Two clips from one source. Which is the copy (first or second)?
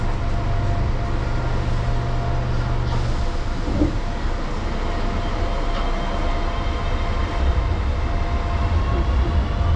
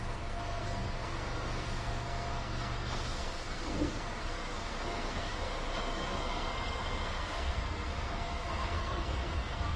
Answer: second